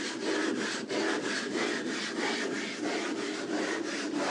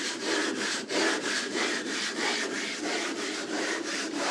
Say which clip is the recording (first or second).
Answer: first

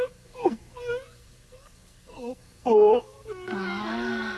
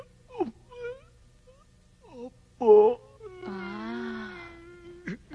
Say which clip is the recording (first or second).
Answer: second